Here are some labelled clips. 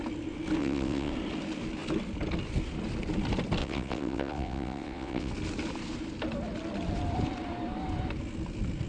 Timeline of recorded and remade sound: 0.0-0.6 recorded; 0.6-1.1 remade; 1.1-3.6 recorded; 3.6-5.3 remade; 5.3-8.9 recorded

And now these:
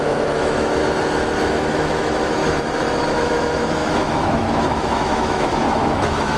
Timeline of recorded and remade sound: 0.0-0.8 remade; 0.8-1.5 recorded; 1.5-2.4 remade; 2.4-3.1 recorded; 3.1-6.4 remade

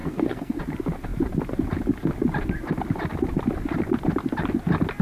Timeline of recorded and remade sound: 0.0-0.6 remade; 0.6-5.0 recorded

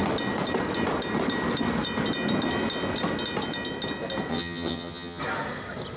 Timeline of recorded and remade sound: 0.0-4.3 recorded; 4.3-5.2 remade; 5.2-6.0 recorded

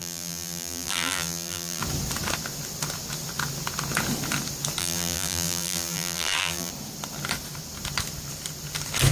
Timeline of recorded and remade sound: 0.0-1.8 remade; 1.8-4.8 recorded; 4.8-6.7 remade; 6.7-9.1 recorded

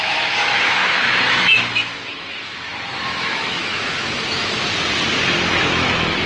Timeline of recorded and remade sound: 0.0-4.4 remade; 4.4-5.5 recorded; 5.5-6.3 remade

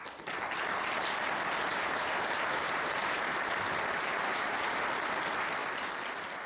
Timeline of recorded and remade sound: 0.0-1.7 recorded; 1.7-4.7 remade; 4.7-6.5 recorded

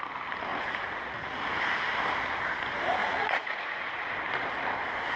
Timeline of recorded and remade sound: 0.0-0.5 recorded; 0.5-1.6 remade; 1.6-3.0 recorded; 3.0-4.1 remade; 4.1-5.2 recorded